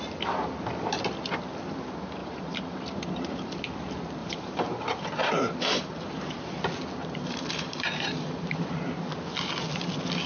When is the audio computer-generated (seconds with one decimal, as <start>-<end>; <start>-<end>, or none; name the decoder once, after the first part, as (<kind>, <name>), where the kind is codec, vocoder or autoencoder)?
2.2-3.6 (vocoder, BigVGAN v2); 4.2-6.2; 7.0-8.8